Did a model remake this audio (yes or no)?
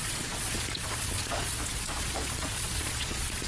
yes